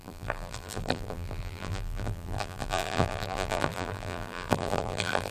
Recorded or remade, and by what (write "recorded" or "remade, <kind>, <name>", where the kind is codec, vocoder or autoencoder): remade, vocoder, BigVGAN v2